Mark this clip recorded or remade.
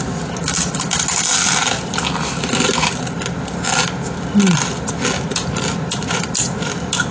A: recorded